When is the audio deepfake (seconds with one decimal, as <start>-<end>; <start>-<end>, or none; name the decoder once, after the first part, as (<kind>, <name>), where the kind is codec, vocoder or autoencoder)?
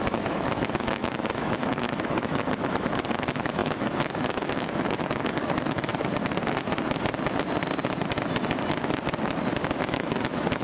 0.0-5.9 (autoencoder, DAC-VAE); 9.9-10.6